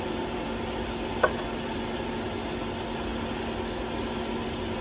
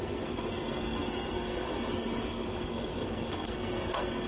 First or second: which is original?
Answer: first